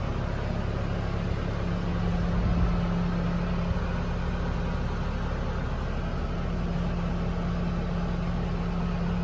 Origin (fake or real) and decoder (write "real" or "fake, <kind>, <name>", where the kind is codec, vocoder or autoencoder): real